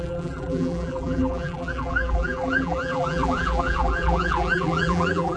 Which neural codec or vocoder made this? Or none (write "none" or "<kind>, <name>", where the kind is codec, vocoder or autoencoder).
vocoder, BigVGAN v2